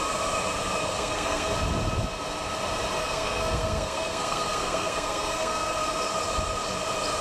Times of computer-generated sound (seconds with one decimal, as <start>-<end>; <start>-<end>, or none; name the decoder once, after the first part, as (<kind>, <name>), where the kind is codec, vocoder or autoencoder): 0.8-1.5 (codec, SNAC); 3.0-6.0